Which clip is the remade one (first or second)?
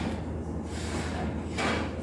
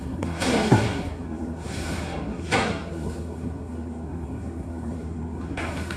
second